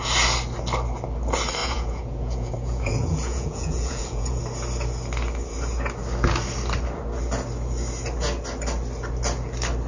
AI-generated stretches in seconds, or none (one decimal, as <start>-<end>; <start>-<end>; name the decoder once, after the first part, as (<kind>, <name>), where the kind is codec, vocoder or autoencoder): 1.6-4.4 (vocoder, Vocos)

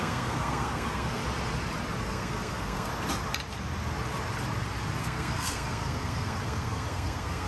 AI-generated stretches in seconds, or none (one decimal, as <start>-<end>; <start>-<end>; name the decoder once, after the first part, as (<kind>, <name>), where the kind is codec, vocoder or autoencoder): 0.0-1.2 (codec, SNAC); 2.0-2.9; 5.0-7.5

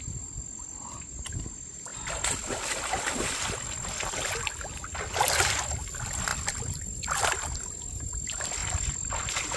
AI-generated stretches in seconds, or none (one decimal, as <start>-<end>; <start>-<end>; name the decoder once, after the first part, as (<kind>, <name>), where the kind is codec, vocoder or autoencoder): none

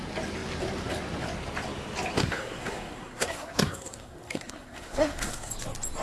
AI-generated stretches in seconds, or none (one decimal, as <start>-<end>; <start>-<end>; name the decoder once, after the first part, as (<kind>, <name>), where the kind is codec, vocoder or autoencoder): 2.2-5.5 (codec, SNAC)

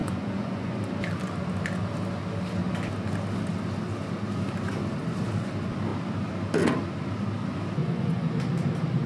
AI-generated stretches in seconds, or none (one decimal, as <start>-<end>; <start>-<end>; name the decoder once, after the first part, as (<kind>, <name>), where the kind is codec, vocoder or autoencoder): 0.0-0.8 (vocoder, Vocos); 7.8-8.3